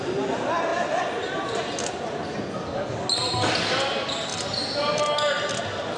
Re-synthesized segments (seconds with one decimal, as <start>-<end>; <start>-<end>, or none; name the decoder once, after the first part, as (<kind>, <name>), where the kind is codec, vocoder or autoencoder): none